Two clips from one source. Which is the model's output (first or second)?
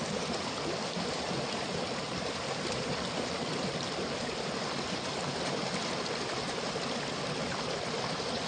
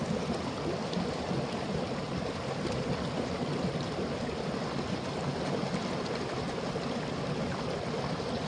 first